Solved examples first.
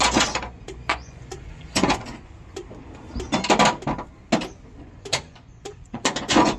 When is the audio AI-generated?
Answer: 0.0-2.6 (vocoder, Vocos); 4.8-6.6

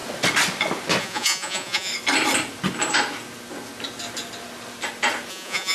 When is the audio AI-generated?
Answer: 1.0-1.9 (vocoder, Vocos); 5.3-5.7

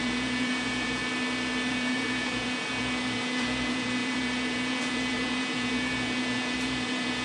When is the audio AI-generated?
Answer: 0.0-1.0 (vocoder, Vocos); 1.7-7.2

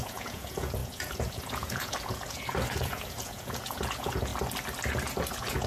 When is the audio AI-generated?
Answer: 0.0-4.3 (vocoder, Vocos); 5.3-5.7